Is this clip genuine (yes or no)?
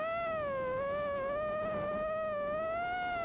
yes